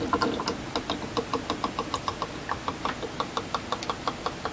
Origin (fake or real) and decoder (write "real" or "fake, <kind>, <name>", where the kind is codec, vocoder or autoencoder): real